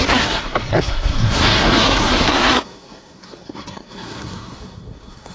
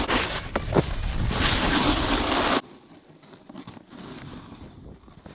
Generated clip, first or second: first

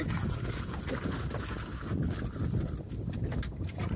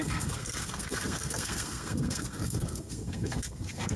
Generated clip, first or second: second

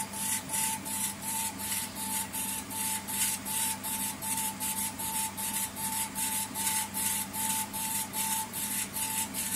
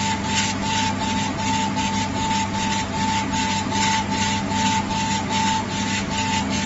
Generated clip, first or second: first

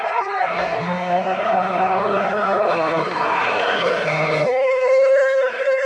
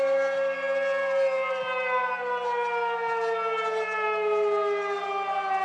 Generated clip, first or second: first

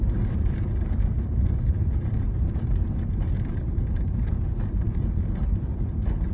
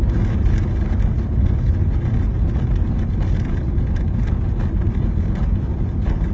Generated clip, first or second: first